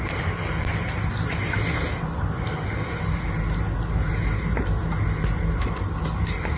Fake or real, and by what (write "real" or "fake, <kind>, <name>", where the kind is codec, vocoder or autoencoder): real